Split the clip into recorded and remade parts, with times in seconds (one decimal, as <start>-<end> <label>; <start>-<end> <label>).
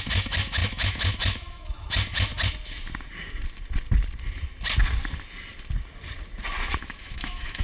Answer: 0.0-2.3 remade; 2.3-6.8 recorded; 6.8-7.6 remade